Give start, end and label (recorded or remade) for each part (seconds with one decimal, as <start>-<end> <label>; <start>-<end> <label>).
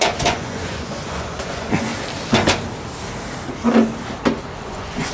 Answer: 0.0-1.9 remade; 1.9-4.6 recorded; 4.6-5.1 remade